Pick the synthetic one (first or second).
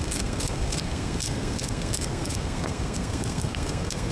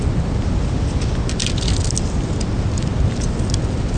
first